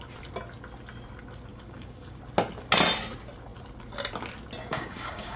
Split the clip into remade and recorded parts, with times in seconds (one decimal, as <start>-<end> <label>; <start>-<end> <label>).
0.0-1.5 recorded; 1.5-2.2 remade; 2.2-4.7 recorded; 4.7-5.4 remade